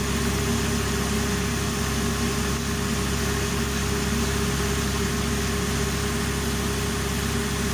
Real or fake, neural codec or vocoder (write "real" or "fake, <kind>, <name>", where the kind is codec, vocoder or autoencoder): real